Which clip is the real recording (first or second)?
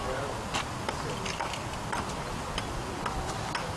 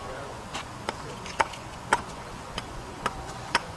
first